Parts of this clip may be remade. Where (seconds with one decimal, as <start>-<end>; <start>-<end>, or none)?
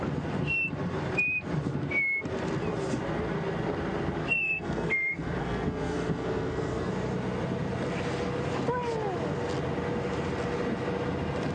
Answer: 4.2-6.9